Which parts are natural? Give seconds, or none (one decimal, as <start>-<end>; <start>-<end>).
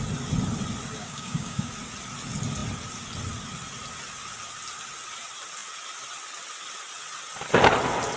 0.0-1.0; 1.7-8.2